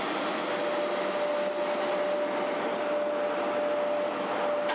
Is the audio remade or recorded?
recorded